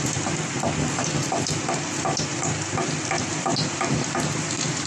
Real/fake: fake